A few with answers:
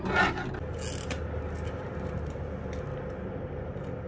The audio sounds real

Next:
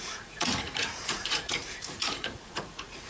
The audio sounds fake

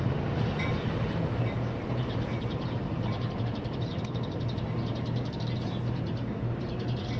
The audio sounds fake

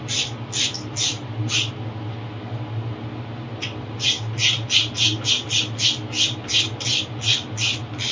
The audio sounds real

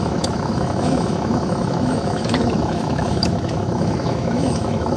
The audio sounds fake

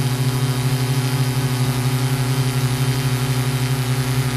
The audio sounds real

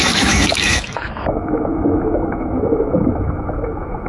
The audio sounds fake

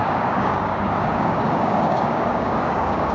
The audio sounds fake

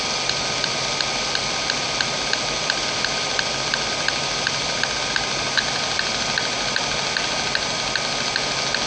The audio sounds real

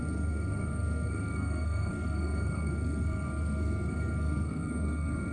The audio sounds fake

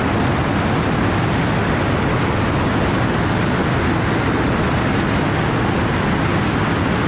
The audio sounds real